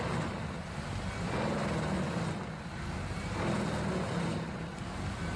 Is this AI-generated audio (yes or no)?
no